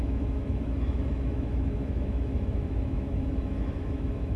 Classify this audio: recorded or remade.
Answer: remade